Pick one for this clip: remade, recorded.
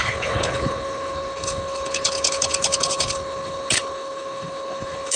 remade